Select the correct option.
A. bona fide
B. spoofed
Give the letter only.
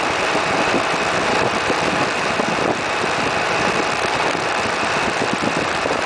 A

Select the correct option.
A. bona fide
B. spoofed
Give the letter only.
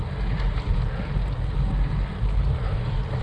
A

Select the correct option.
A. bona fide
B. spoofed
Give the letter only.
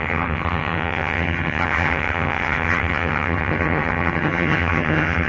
B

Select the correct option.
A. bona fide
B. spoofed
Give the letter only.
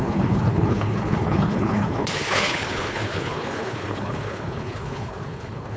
B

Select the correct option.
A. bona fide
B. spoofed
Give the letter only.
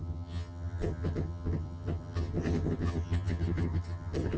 B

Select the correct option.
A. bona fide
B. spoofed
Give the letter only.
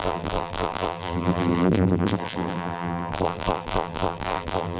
B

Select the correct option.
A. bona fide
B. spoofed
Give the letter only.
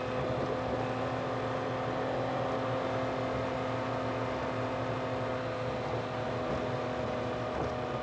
A